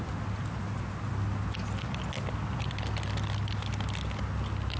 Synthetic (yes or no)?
no